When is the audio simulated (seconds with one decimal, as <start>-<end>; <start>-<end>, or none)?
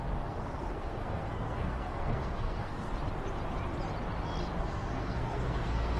0.0-2.9; 4.6-6.0